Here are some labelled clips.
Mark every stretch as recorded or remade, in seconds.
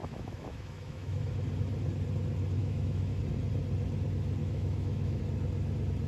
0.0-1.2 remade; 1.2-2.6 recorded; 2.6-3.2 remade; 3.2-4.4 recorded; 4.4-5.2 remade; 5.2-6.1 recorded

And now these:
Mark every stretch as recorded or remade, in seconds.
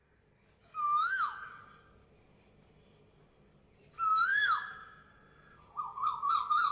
0.0-0.6 recorded; 0.6-1.5 remade; 1.5-4.3 recorded; 4.3-5.1 remade; 5.1-6.7 recorded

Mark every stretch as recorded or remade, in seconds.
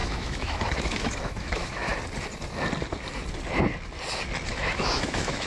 0.0-1.9 remade; 1.9-4.5 recorded; 4.5-5.5 remade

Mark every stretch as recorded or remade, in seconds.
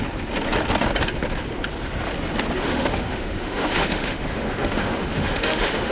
0.0-2.6 recorded; 2.6-5.9 remade